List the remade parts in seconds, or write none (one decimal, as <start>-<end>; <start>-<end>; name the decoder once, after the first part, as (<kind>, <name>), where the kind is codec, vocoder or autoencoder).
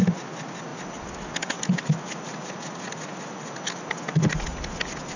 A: none